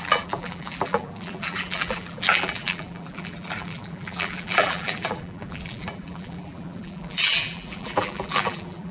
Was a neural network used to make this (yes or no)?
yes